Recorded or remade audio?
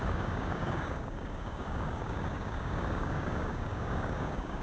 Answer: remade